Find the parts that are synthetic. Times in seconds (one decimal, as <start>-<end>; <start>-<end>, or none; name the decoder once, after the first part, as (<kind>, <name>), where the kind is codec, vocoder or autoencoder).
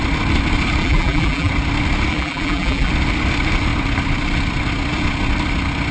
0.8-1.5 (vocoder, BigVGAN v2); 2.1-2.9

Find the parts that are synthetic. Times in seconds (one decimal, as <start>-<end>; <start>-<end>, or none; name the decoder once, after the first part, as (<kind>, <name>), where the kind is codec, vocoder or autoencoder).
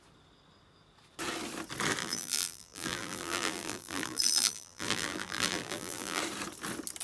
2.0-6.2 (vocoder, BigVGAN v2)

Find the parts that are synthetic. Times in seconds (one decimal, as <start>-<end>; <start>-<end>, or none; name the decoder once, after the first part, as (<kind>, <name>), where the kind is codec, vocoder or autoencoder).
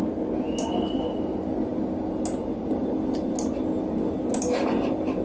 none